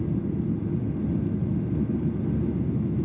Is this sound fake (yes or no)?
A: no